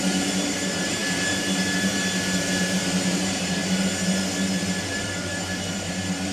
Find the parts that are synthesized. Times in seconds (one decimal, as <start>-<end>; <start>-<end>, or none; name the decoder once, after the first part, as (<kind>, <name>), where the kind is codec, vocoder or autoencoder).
0.0-3.6 (vocoder, BigVGAN v2); 4.9-6.3